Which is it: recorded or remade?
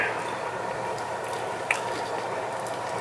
remade